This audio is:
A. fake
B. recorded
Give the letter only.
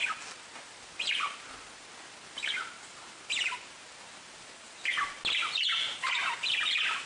B